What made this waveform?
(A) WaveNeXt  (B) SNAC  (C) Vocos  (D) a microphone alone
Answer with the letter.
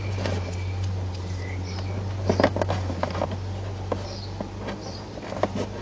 D